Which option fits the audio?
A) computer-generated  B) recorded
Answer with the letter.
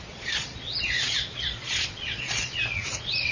A